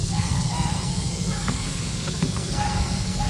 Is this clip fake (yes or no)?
yes